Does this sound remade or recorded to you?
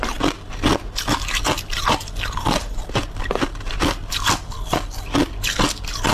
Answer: recorded